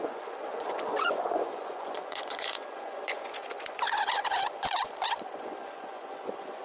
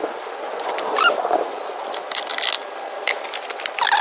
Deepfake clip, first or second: first